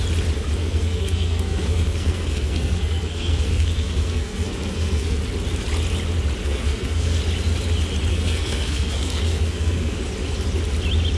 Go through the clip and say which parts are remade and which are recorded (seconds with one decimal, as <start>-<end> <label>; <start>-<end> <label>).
0.0-0.6 recorded; 0.6-5.2 remade; 5.2-6.4 recorded; 6.4-7.2 remade; 7.2-8.1 recorded; 8.1-10.0 remade; 10.0-11.2 recorded